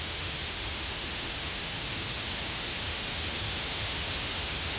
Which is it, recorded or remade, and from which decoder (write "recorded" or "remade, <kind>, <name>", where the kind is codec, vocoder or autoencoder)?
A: remade, autoencoder, DAC-VAE